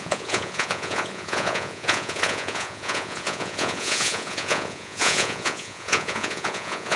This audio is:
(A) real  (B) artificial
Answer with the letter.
B